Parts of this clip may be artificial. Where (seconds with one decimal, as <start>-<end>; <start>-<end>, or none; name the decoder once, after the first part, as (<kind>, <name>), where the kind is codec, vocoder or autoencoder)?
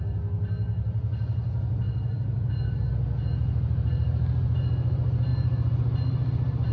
none